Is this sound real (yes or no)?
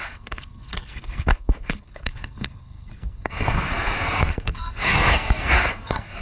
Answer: no